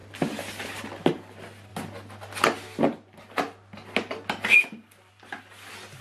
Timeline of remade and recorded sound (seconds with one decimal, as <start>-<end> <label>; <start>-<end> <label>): 0.0-6.0 recorded